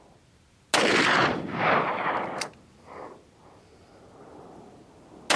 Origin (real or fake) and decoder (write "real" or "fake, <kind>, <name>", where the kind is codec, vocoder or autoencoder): real